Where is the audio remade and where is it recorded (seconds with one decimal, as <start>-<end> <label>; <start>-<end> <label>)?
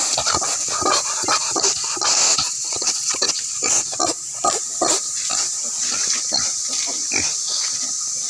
0.0-2.3 recorded; 2.3-3.3 remade; 3.3-8.3 recorded